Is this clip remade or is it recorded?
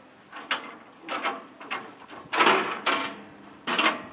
recorded